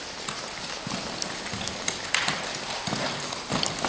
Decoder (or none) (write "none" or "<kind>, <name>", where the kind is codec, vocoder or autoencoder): none